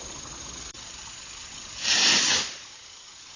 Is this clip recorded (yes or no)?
yes